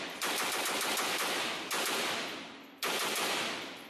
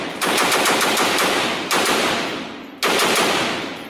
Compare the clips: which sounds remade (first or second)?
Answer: second